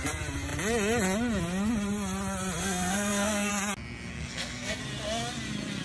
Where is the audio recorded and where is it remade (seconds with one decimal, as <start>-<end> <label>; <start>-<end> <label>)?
0.0-2.6 recorded; 2.6-3.5 remade; 3.5-4.1 recorded; 4.1-4.8 remade; 4.8-5.8 recorded